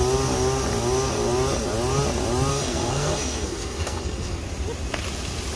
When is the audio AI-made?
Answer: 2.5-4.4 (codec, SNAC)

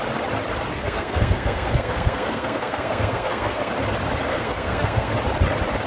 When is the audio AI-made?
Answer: 0.7-3.7 (codec, SNAC); 4.3-5.1

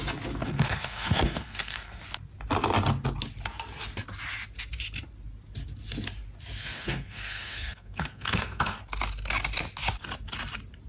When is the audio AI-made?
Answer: 0.4-2.0 (codec, SNAC); 6.6-8.8

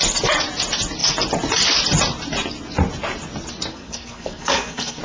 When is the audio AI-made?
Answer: 3.7-5.0 (codec, SNAC)

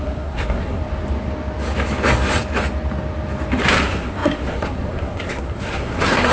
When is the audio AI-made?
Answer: 0.0-0.8 (codec, SNAC); 3.7-6.3

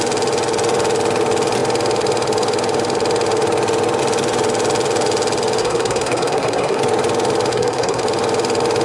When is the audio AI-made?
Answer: 5.6-6.8 (codec, SNAC); 7.5-8.0